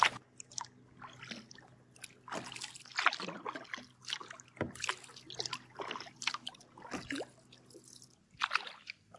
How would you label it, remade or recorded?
recorded